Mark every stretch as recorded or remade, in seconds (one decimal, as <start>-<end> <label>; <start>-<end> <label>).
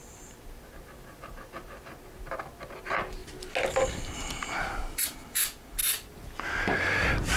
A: 0.0-5.8 recorded; 5.8-6.4 remade; 6.4-7.4 recorded